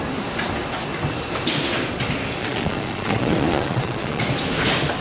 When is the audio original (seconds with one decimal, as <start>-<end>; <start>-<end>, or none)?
0.0-2.4; 4.2-5.0